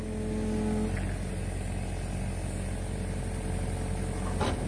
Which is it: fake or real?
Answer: real